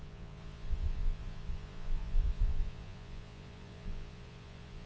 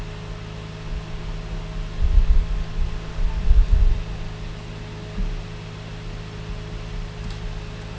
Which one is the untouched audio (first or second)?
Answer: second